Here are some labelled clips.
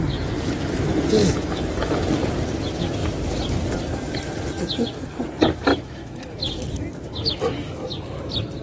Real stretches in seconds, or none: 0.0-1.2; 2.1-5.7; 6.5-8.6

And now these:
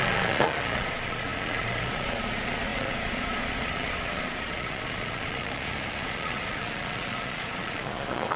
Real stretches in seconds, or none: none

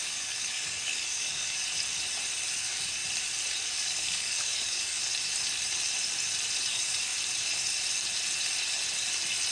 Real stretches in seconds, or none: 1.6-2.5; 3.0-3.6; 5.0-6.6; 7.1-9.5

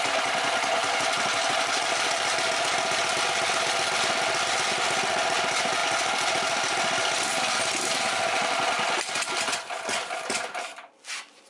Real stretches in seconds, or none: 0.0-11.5

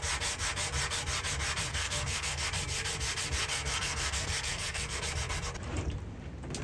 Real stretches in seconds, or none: 0.0-1.7; 2.4-3.5; 5.0-6.6

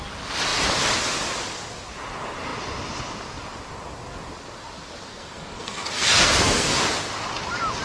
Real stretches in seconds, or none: 0.0-5.1; 6.8-7.8